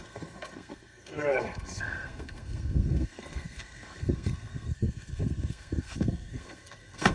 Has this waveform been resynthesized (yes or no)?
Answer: yes